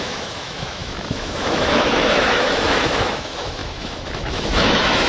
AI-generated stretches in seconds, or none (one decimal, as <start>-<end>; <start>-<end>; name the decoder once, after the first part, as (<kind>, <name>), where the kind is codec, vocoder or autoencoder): 0.0-5.1 (autoencoder, DAC-VAE)